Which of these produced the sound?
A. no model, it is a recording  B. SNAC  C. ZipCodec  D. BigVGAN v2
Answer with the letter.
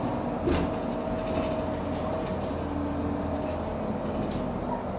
A